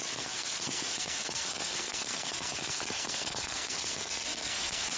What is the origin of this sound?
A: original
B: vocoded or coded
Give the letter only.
B